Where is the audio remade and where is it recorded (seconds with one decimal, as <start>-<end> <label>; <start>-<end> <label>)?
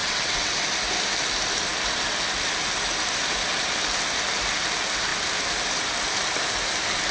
0.0-0.6 remade; 0.6-7.1 recorded